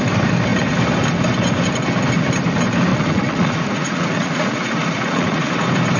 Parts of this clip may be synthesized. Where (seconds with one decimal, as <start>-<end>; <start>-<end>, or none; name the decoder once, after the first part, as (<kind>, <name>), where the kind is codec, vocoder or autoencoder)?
2.9-5.5 (vocoder, Vocos)